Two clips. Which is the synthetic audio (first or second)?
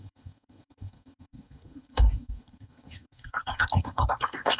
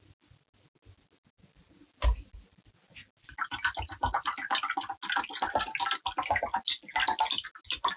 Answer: first